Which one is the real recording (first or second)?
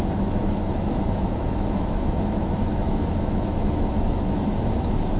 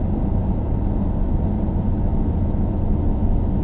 second